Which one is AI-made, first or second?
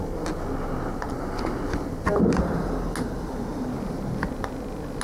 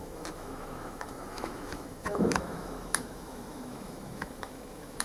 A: second